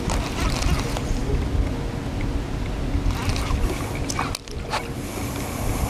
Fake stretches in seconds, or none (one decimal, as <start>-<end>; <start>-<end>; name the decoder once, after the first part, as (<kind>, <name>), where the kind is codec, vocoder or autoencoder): none